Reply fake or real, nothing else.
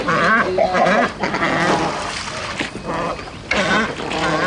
real